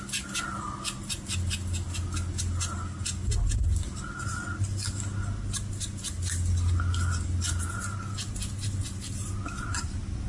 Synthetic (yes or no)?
no